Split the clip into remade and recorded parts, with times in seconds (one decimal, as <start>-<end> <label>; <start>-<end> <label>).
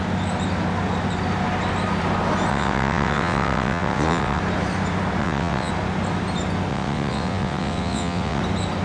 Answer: 0.0-2.5 recorded; 2.5-4.4 remade; 4.4-5.2 recorded; 5.2-5.7 remade; 5.7-6.7 recorded; 6.7-8.4 remade; 8.4-8.8 recorded